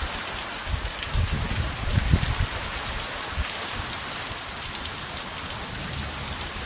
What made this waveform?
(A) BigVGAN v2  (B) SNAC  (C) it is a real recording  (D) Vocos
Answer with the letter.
C